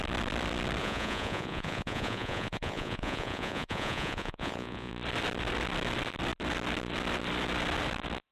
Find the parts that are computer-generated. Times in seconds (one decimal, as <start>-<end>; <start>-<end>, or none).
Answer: 0.8-4.9